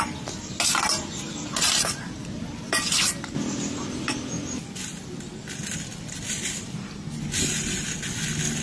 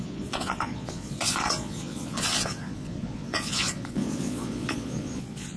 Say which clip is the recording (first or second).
first